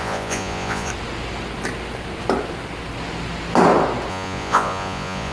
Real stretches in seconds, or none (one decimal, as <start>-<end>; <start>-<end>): 0.9-4.1